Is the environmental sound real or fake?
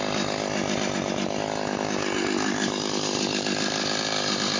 real